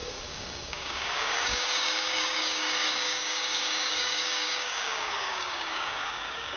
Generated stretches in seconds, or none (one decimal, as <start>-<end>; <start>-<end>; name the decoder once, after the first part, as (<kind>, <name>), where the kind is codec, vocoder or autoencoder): 0.0-6.6 (codec, DAC)